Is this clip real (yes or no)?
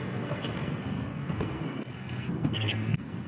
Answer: no